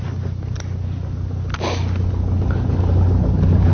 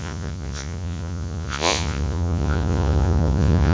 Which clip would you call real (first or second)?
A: first